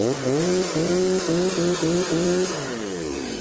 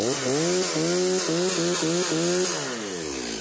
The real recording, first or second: second